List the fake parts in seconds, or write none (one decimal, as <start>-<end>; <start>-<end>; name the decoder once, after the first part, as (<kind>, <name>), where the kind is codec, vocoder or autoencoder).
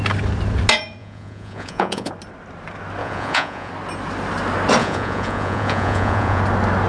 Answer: 1.0-2.1 (vocoder, Vocos); 3.0-3.7; 4.8-6.4